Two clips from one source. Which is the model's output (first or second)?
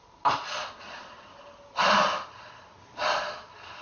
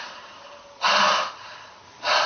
first